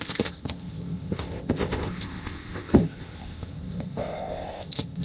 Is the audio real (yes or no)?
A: no